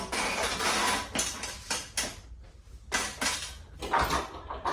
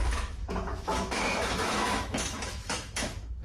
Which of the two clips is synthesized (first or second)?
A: second